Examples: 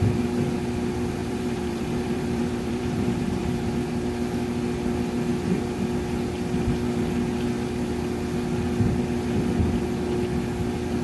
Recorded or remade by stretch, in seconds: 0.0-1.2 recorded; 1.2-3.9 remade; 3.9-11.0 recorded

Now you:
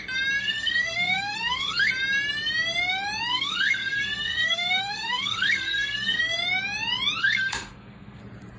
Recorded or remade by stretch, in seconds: 0.0-0.4 recorded; 0.4-1.9 remade; 1.9-3.3 recorded; 3.3-6.2 remade; 6.2-7.2 recorded; 7.2-8.2 remade; 8.2-8.6 recorded

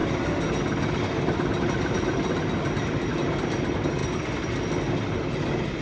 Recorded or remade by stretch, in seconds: 0.0-5.8 recorded

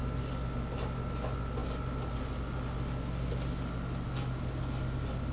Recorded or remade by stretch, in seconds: 0.0-5.3 recorded

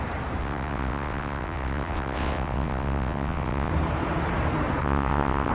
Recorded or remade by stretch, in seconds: 0.0-0.4 recorded; 0.4-3.7 remade; 3.7-4.8 recorded; 4.8-5.5 remade

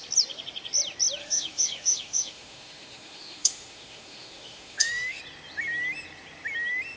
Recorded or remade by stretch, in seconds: 0.0-1.2 recorded; 1.2-5.2 remade; 5.2-7.0 recorded

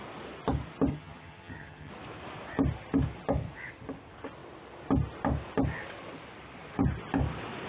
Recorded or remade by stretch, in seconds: 0.0-0.9 recorded; 0.9-1.9 remade; 1.9-7.7 recorded